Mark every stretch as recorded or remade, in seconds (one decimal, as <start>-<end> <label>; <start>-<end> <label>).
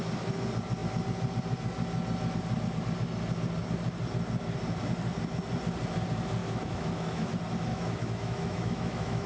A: 0.0-6.4 recorded; 6.4-7.3 remade; 7.3-7.7 recorded; 7.7-9.3 remade